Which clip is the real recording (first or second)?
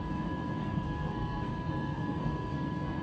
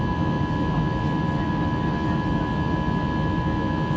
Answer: second